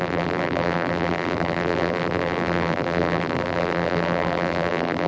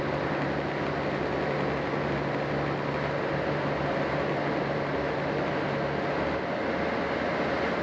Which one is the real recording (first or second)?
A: second